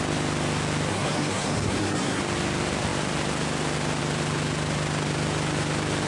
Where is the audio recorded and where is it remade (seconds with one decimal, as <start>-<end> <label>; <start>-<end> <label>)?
0.0-0.9 recorded; 0.9-2.2 remade; 2.2-6.1 recorded